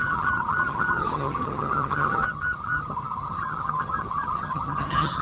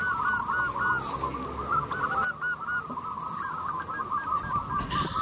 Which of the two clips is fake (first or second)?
first